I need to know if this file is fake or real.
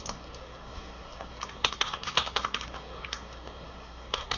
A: fake